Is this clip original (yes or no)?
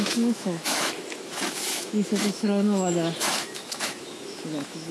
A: no